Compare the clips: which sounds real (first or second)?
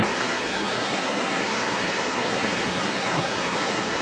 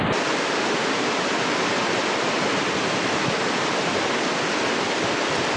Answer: second